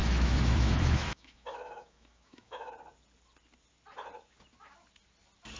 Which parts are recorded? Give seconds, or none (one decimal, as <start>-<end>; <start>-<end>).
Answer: 2.7-5.6